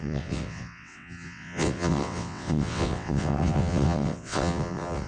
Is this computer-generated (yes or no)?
yes